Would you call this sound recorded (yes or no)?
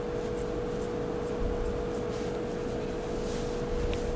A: yes